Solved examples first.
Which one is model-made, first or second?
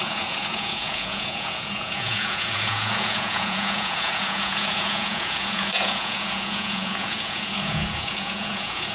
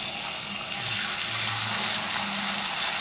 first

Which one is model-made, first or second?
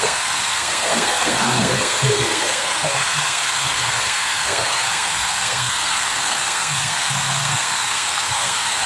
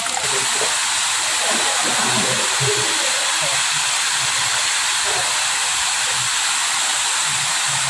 first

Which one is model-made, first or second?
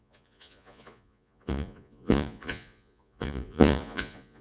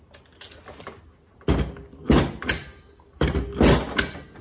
first